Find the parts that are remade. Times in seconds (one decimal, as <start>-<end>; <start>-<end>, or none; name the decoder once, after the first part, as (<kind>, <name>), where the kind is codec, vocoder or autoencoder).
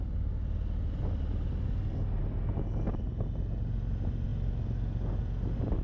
none